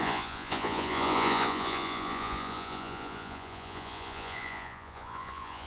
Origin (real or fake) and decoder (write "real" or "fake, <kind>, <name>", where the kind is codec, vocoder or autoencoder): fake, vocoder, Vocos